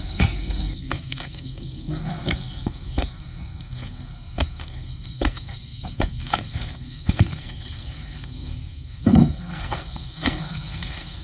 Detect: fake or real fake